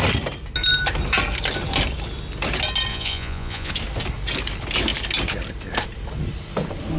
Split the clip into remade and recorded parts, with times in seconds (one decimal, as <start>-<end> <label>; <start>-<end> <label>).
0.0-2.9 recorded; 2.9-3.7 remade; 3.7-7.0 recorded